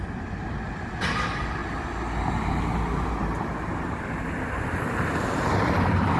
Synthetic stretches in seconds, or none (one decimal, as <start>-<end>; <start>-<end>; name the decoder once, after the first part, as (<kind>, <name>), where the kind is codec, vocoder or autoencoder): 0.0-1.6 (vocoder, BigVGAN v2); 5.3-6.2